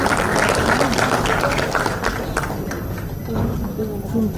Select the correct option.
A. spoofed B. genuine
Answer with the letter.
B